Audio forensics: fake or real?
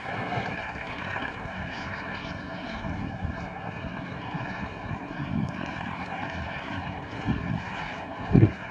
fake